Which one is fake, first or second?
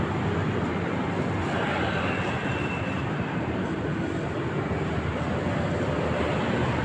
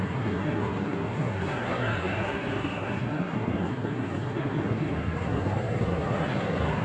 second